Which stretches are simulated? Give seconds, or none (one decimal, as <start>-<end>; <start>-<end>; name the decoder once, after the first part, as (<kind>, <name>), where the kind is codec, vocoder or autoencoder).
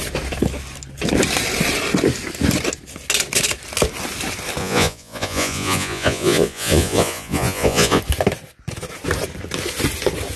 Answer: 4.6-8.0 (vocoder, Vocos)